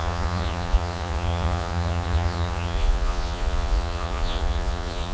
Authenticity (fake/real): fake